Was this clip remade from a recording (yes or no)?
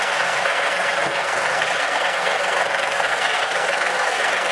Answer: yes